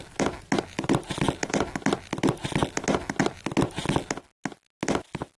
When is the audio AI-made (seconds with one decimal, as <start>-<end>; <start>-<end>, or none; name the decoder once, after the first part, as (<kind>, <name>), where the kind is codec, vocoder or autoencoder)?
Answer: none